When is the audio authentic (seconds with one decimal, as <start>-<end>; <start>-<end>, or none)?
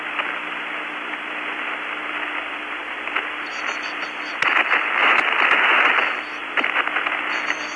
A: 0.0-7.8